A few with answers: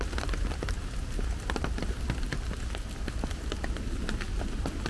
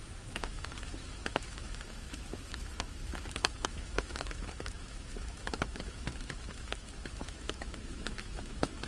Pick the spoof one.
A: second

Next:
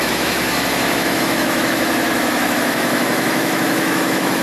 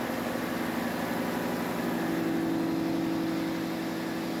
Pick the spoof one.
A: first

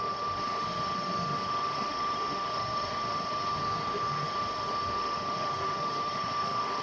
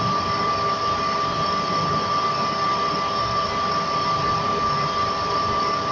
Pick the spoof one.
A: first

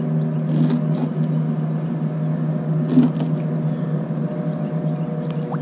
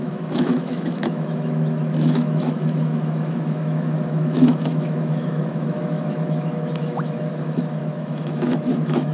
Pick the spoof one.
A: second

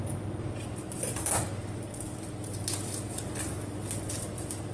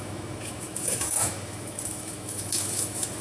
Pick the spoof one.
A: second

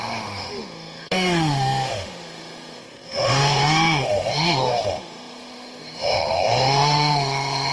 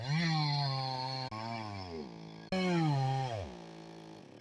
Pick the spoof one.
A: first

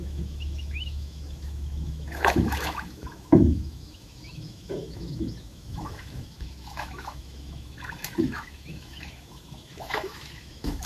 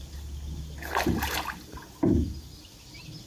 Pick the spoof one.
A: first